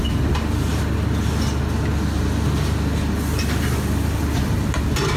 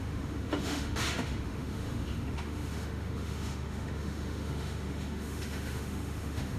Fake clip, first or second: second